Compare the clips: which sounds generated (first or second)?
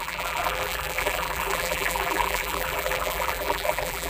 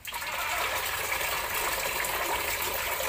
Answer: first